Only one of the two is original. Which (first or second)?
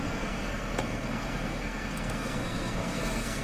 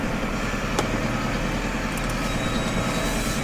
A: second